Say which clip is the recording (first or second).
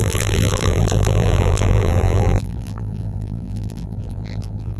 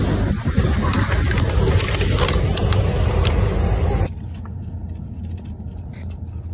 second